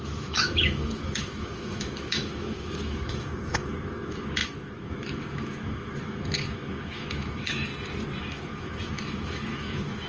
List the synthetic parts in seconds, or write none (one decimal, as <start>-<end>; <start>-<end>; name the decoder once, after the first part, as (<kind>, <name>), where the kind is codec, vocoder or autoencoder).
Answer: 0.0-7.7 (autoencoder, DAC-VAE); 8.2-10.1